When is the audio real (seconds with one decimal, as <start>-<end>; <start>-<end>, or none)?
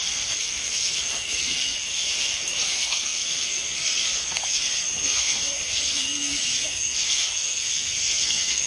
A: none